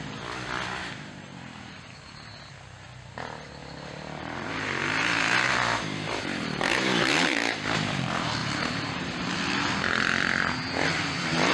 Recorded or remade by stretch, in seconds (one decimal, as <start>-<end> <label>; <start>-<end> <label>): 0.0-0.8 recorded; 0.8-1.9 remade; 1.9-3.6 recorded; 3.6-8.0 remade; 8.0-8.4 recorded; 8.4-9.2 remade; 9.2-11.5 recorded